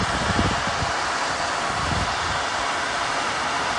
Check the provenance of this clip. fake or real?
real